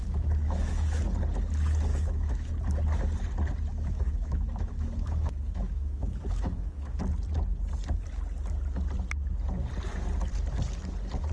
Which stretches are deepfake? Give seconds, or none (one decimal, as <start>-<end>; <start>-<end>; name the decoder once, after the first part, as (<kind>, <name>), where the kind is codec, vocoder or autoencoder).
0.0-1.0 (autoencoder, DAC-VAE); 1.9-2.5; 3.7-7.0

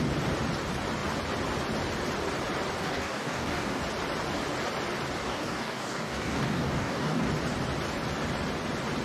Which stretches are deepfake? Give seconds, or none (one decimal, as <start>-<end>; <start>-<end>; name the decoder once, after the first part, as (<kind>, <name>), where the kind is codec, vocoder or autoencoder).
2.8-3.8 (codec, DAC); 5.2-7.3

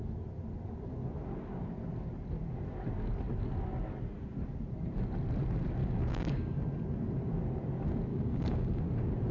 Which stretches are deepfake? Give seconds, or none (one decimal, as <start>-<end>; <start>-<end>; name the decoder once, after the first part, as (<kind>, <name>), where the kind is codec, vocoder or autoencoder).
5.8-6.6 (codec, DAC); 8.1-8.8

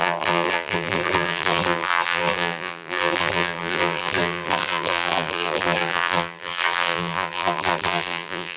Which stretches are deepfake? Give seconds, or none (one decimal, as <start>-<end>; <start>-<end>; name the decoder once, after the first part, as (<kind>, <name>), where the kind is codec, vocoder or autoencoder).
0.0-8.6 (vocoder, BigVGAN v2)

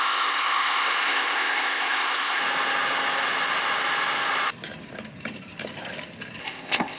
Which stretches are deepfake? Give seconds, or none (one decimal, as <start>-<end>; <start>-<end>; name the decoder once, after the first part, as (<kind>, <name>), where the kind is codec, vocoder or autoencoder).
0.0-2.4 (codec, ZipCodec); 6.4-7.0

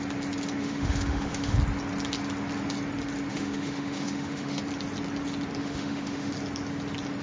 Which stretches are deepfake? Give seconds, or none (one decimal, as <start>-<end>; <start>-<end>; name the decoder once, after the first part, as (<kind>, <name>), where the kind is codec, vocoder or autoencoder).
0.6-1.6 (autoencoder, DAC-VAE); 3.3-4.6; 5.6-6.3

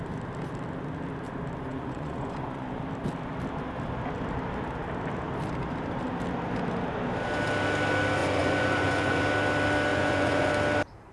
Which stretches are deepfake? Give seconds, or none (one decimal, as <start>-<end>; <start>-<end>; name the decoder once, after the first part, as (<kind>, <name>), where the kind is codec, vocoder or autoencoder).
1.7-2.8 (vocoder, Vocos); 8.2-9.2; 9.9-10.5

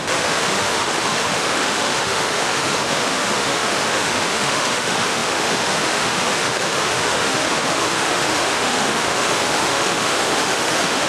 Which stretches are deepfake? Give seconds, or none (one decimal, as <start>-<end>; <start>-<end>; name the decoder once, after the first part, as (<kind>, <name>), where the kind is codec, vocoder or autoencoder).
0.0-11.1 (autoencoder, DAC-VAE)